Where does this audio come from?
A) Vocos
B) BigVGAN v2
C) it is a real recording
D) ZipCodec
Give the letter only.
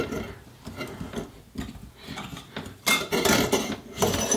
C